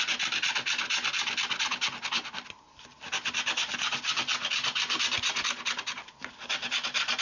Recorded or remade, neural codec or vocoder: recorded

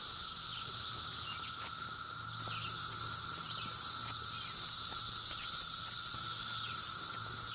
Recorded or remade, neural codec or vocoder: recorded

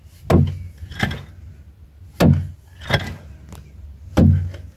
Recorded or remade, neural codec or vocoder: recorded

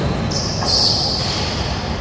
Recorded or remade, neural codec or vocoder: recorded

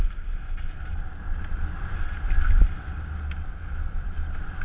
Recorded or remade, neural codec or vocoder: recorded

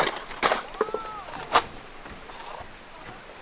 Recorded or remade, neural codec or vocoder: recorded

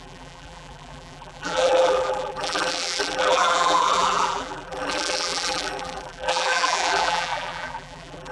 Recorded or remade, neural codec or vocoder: remade, vocoder, BigVGAN v2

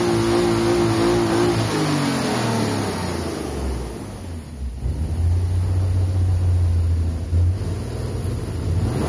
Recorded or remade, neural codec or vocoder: recorded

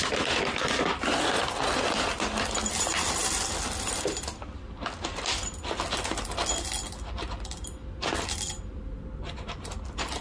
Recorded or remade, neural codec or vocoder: recorded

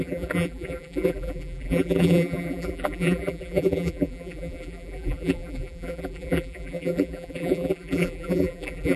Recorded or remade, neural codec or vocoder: remade, vocoder, BigVGAN v2